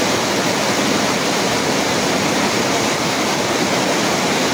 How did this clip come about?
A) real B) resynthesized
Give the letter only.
A